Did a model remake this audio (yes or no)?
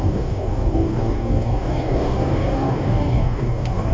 yes